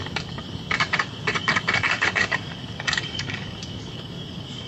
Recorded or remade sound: remade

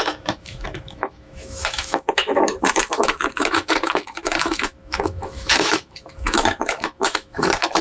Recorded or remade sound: remade